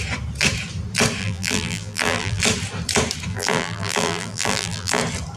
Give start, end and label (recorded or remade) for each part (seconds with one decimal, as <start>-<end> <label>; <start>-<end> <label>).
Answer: 0.0-1.2 recorded; 1.2-2.4 remade; 2.4-3.3 recorded; 3.3-5.0 remade; 5.0-5.4 recorded